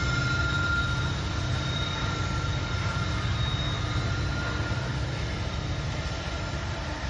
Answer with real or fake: real